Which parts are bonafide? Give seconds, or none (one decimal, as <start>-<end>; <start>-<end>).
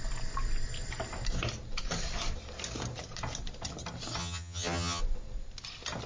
0.0-4.2; 5.0-6.1